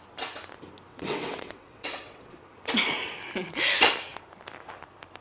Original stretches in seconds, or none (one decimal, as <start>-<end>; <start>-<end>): 0.0-0.9; 2.4-5.2